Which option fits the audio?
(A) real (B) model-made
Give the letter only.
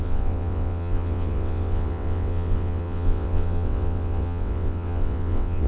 B